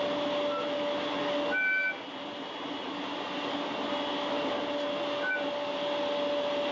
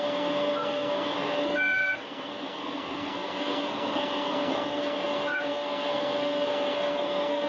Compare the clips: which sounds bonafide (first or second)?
first